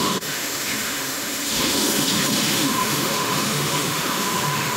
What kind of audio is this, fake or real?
fake